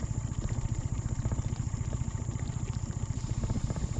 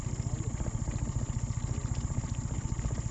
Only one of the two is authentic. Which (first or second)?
second